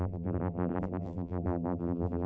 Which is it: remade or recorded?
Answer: remade